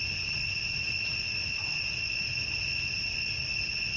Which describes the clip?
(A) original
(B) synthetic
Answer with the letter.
A